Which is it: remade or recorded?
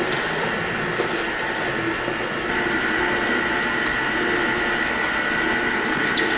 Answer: recorded